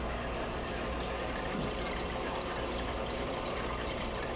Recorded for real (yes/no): yes